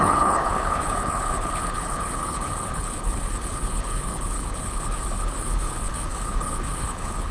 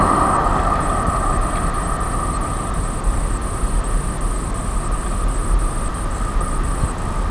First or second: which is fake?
first